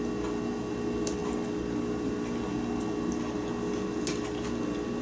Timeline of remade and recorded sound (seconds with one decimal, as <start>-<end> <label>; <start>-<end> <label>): 0.0-5.0 recorded